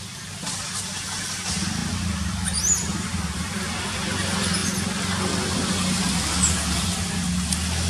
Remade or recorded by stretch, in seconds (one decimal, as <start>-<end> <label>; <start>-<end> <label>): 0.0-7.9 recorded